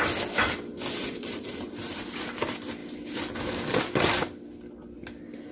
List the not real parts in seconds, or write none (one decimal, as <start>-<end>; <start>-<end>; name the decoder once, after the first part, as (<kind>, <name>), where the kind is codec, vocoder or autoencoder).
1.0-2.0 (vocoder, BigVGAN v2)